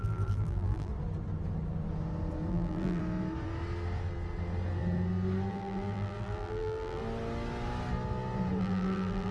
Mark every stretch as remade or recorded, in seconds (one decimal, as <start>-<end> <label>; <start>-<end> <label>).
0.0-0.9 remade; 0.9-2.5 recorded; 2.5-3.0 remade; 3.0-5.5 recorded; 5.5-7.0 remade; 7.0-8.6 recorded; 8.6-9.3 remade